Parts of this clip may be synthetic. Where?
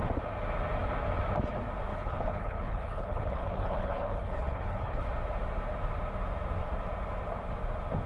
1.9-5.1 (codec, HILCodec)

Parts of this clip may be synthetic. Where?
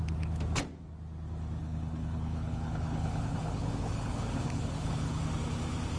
1.6-5.2 (codec, HILCodec)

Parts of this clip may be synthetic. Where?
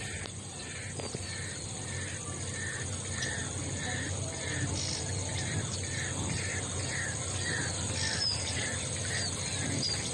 none